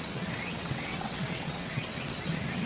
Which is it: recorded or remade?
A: remade